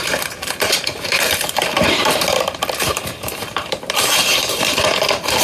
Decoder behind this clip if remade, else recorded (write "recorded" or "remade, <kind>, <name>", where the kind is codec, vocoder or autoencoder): remade, vocoder, BigVGAN v2